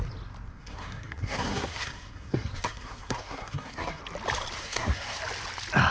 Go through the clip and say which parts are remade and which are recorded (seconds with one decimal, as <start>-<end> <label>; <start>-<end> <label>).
0.0-0.5 recorded; 0.5-4.0 remade; 4.0-4.6 recorded; 4.6-5.2 remade; 5.2-5.9 recorded